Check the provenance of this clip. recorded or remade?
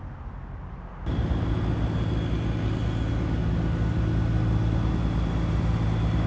recorded